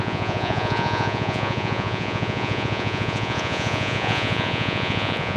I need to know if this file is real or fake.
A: fake